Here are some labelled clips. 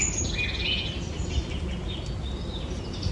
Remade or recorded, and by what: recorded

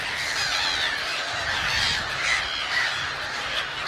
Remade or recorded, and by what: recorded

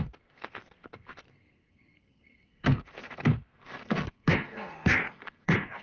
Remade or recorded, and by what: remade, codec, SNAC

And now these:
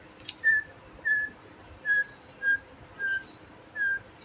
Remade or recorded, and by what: recorded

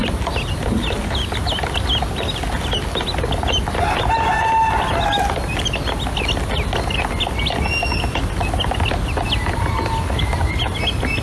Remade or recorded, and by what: recorded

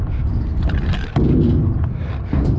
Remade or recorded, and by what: recorded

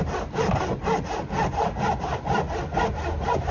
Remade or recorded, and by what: recorded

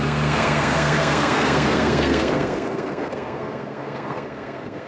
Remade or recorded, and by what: remade, codec, SNAC